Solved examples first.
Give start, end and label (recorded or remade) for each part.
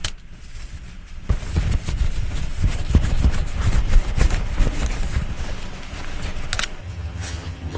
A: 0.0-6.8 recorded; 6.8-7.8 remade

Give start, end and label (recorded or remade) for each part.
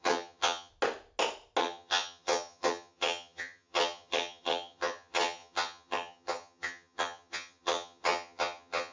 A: 0.0-0.7 remade; 0.7-1.6 recorded; 1.6-8.9 remade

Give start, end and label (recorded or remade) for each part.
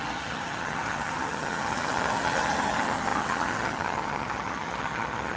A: 0.0-5.4 remade